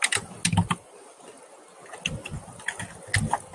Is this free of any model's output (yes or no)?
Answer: yes